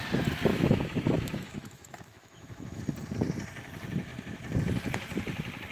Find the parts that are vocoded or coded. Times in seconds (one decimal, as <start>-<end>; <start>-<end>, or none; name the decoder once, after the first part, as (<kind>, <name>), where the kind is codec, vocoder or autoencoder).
0.5-2.8 (autoencoder, DAC-VAE)